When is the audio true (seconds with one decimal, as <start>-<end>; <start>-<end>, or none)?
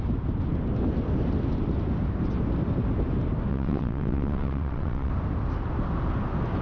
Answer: 0.0-3.5; 5.1-6.6